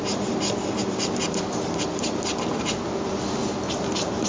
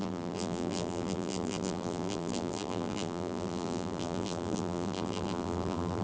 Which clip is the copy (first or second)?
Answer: second